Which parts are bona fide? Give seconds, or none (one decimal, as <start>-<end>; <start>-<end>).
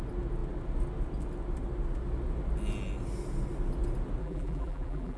0.0-4.2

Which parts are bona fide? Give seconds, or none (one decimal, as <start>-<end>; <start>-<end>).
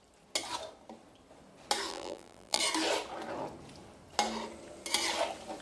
0.0-1.9; 2.6-5.6